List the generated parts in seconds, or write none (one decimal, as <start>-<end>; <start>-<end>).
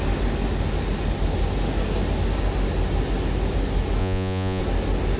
4.0-4.6